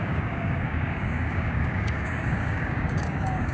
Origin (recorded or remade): remade